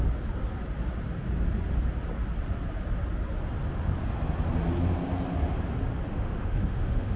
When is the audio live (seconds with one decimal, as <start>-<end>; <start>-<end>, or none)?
0.0-6.1